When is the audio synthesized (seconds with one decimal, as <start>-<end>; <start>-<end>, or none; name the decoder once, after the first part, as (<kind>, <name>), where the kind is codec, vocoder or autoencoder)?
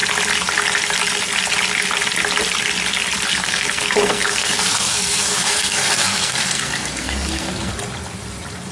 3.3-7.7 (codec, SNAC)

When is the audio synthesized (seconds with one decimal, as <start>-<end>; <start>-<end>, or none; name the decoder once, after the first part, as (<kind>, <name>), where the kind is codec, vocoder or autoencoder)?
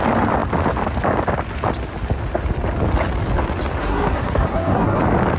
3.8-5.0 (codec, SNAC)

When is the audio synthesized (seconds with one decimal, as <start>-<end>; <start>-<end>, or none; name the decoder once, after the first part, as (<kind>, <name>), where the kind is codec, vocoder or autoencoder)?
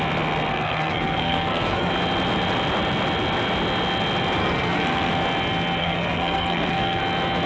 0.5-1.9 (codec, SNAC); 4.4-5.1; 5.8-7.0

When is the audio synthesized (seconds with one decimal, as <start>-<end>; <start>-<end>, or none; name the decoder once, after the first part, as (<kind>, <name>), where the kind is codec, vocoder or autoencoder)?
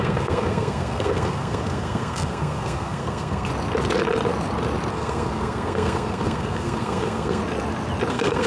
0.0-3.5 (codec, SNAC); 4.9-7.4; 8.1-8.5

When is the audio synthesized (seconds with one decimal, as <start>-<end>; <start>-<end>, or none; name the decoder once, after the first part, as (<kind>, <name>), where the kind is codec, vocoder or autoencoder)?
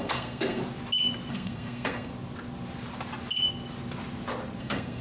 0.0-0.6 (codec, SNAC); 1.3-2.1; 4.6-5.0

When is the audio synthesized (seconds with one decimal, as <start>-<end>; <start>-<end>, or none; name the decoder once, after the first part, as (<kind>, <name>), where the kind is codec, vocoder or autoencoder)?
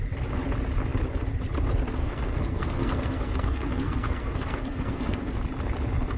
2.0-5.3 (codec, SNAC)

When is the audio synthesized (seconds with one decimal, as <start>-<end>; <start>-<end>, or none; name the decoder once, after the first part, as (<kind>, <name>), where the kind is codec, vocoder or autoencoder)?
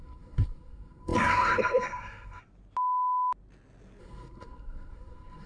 0.0-2.4 (codec, SNAC); 4.0-5.5